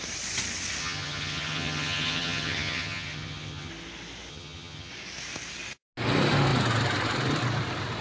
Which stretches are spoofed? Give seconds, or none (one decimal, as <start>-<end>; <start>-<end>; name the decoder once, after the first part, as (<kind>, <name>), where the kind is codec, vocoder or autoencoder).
0.8-3.7 (vocoder, HiFi-GAN); 4.3-4.9